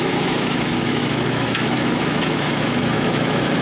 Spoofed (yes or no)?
yes